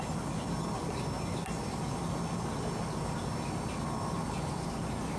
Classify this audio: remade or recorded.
recorded